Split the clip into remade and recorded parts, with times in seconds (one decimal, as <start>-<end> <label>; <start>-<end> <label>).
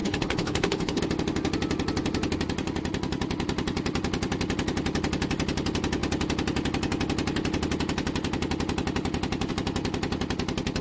0.0-1.0 remade; 1.0-10.8 recorded